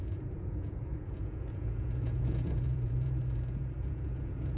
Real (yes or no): no